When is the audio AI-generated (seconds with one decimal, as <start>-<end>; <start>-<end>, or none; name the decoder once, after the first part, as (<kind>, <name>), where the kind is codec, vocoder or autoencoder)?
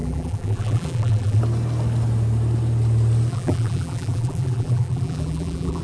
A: 0.0-1.4 (vocoder, BigVGAN v2); 3.3-5.8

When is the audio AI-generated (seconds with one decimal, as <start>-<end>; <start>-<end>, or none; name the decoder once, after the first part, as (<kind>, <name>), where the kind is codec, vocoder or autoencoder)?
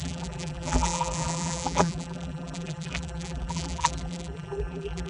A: 0.0-5.1 (vocoder, BigVGAN v2)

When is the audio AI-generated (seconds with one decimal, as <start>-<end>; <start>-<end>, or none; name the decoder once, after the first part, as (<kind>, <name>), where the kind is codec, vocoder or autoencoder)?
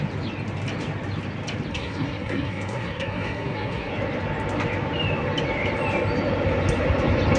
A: 1.7-3.9 (codec, SNAC)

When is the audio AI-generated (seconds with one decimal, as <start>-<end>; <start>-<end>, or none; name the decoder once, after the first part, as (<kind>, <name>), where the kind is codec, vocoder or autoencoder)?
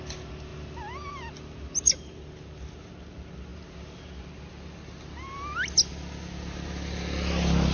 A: none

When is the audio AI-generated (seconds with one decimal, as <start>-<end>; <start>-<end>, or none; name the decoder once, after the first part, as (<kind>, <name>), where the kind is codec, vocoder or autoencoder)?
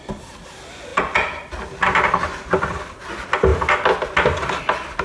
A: none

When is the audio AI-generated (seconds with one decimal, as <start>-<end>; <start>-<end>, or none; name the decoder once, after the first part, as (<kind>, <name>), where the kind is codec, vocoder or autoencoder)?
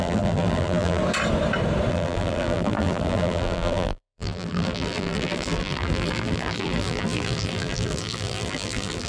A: 0.0-1.0 (vocoder, BigVGAN v2); 1.9-9.1